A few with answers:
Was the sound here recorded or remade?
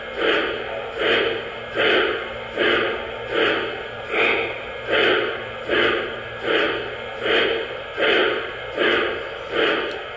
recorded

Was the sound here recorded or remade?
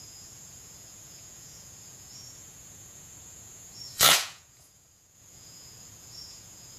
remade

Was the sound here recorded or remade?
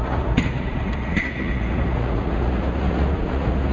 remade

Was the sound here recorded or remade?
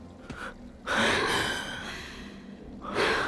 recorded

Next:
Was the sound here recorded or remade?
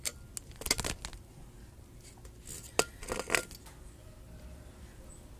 recorded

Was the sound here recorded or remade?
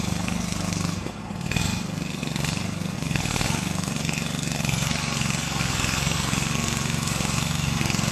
remade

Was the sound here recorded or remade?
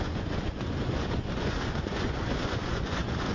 remade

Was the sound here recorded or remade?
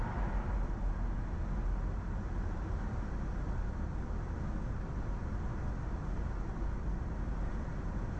recorded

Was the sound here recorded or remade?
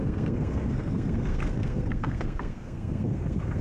remade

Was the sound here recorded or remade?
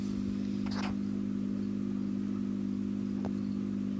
recorded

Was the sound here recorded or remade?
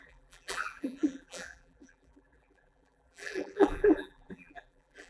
remade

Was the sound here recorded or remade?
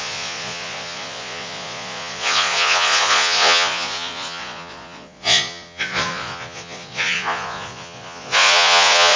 remade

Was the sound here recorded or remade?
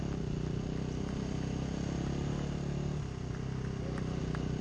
recorded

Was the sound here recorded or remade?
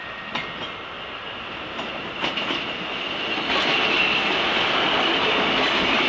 recorded